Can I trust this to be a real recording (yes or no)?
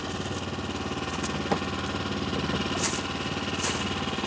yes